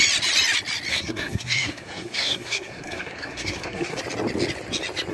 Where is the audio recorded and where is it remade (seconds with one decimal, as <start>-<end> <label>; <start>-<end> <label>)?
0.0-0.9 recorded; 0.9-4.0 remade; 4.0-5.1 recorded